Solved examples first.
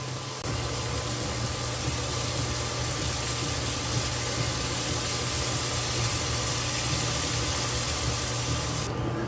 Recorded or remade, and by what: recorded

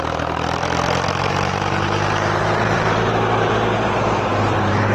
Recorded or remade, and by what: remade, vocoder, BigVGAN v2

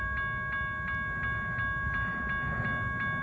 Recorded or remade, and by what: recorded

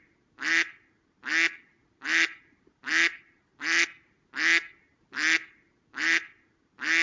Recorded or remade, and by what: recorded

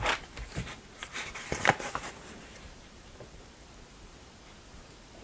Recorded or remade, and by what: remade, vocoder, BigVGAN v2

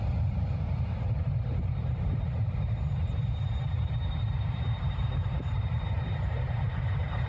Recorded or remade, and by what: remade, vocoder, BigVGAN v2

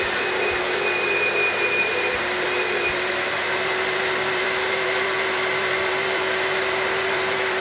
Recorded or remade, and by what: remade, vocoder, BigVGAN v2